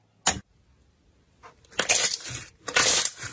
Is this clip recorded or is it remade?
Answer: recorded